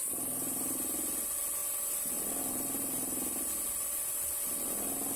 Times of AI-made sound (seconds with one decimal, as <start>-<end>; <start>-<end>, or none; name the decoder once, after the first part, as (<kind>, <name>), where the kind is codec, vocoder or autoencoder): none